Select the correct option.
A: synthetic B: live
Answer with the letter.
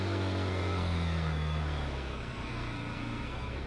A